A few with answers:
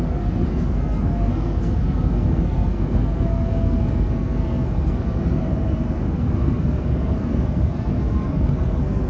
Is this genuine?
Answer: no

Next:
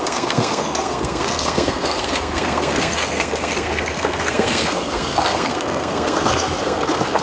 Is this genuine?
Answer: no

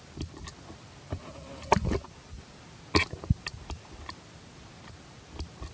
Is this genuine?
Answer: yes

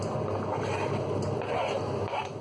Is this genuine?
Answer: yes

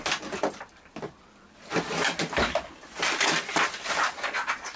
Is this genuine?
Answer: yes